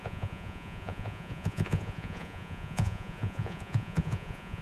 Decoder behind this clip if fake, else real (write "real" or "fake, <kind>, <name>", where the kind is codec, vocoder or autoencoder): fake, vocoder, Vocos